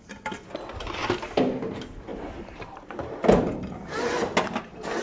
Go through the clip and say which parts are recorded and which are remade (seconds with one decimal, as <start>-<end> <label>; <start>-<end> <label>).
0.0-2.1 recorded; 2.1-3.5 remade; 3.5-5.0 recorded